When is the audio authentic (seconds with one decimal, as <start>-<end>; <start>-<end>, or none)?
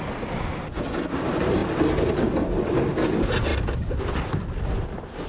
0.0-5.3